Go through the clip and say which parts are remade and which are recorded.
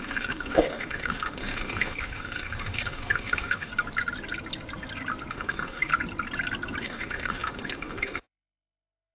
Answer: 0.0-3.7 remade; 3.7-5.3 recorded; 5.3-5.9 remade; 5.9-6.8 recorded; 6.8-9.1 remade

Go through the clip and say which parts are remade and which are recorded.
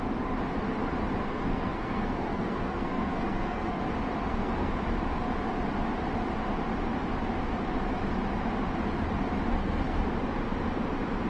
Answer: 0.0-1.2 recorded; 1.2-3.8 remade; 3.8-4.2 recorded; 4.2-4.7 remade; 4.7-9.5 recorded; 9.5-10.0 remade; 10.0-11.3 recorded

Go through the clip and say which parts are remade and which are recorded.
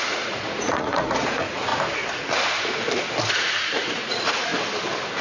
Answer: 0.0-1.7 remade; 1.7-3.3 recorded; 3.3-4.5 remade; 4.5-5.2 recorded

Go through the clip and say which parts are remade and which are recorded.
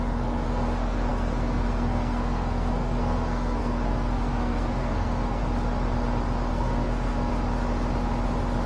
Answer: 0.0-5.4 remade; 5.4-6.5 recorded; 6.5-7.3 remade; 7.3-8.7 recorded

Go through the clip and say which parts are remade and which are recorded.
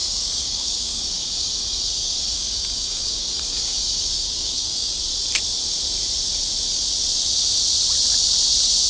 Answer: 0.0-5.0 remade; 5.0-8.9 recorded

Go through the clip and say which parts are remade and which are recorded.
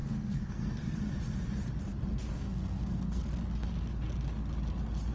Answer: 0.0-1.1 remade; 1.1-2.1 recorded; 2.1-3.2 remade; 3.2-5.1 recorded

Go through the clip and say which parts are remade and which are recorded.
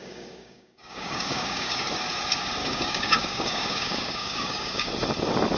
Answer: 0.0-1.8 remade; 1.8-2.6 recorded; 2.6-4.9 remade; 4.9-5.6 recorded